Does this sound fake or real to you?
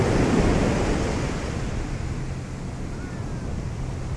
real